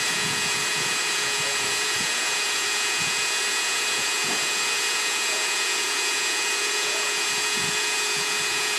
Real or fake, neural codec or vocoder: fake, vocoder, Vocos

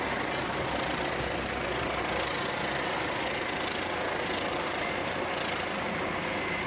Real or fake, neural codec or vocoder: real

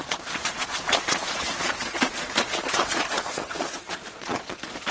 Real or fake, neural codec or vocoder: fake, vocoder, Vocos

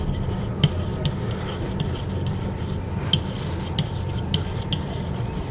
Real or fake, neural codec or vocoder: real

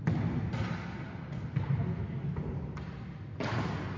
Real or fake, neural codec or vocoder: real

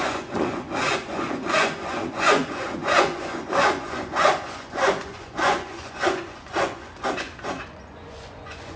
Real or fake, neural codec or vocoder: fake, vocoder, Vocos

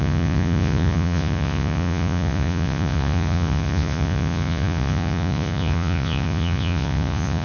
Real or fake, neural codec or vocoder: fake, vocoder, Vocos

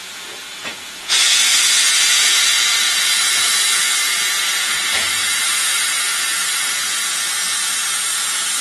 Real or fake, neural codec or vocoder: fake, vocoder, Vocos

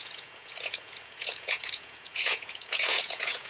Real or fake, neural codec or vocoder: fake, vocoder, Vocos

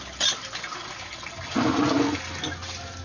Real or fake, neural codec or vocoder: real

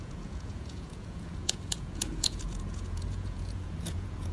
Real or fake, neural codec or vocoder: fake, vocoder, Vocos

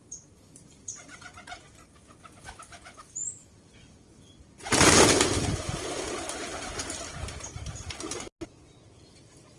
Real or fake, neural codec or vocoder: real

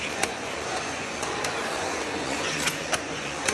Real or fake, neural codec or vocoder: fake, vocoder, Vocos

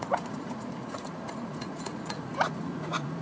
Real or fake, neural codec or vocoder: fake, vocoder, Vocos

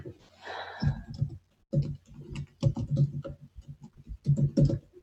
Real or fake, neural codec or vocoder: real